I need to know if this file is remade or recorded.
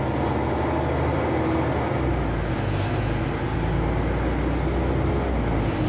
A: recorded